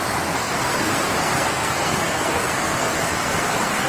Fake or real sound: fake